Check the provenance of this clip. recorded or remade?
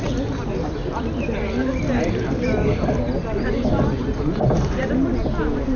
recorded